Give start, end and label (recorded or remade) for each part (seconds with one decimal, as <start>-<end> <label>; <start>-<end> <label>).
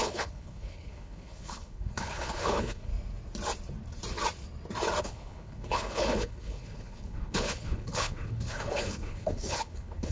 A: 0.0-2.9 remade; 2.9-5.0 recorded; 5.0-10.1 remade